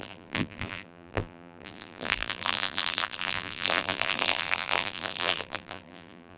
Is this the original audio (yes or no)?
no